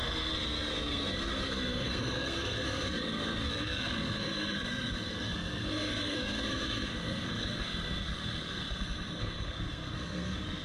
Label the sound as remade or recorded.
remade